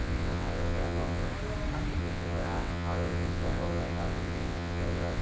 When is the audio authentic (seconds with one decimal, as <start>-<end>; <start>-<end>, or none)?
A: 1.3-2.0